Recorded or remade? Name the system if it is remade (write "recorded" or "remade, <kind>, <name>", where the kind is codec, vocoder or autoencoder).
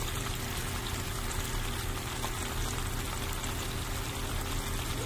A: recorded